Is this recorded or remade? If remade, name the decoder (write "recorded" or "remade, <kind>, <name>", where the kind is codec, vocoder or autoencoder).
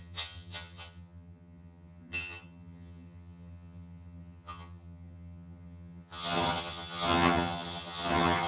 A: remade, vocoder, HiFi-GAN